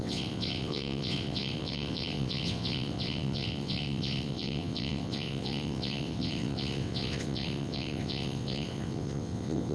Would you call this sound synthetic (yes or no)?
yes